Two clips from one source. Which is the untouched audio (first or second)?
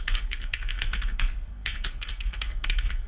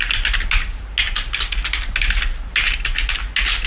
second